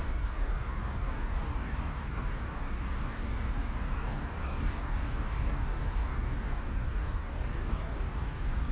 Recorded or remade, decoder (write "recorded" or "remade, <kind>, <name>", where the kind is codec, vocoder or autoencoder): remade, codec, DAC